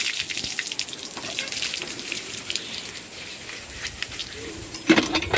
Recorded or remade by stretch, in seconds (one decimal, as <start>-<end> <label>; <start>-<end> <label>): 0.0-1.8 recorded; 1.8-2.6 remade; 2.6-4.2 recorded; 4.2-5.0 remade; 5.0-5.4 recorded